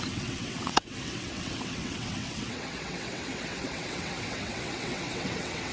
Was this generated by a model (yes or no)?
yes